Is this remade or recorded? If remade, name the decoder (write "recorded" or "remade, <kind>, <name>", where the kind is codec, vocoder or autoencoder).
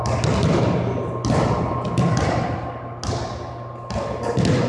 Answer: recorded